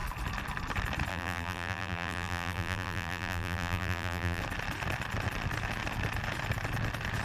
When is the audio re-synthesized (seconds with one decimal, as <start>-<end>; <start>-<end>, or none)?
1.1-4.4